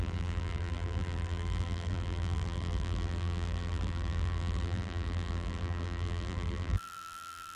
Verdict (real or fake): fake